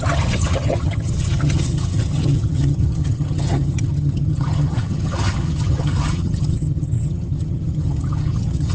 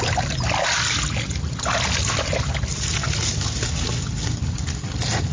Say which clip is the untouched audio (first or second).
second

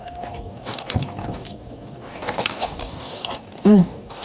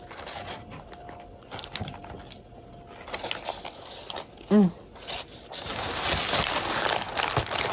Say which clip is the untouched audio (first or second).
second